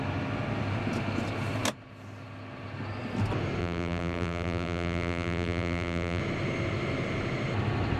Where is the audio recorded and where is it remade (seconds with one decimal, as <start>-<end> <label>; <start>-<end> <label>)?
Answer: 0.0-3.6 recorded; 3.6-6.2 remade; 6.2-8.0 recorded